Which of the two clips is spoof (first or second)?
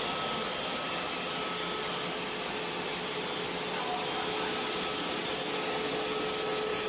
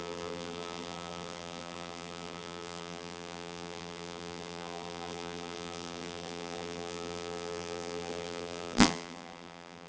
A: second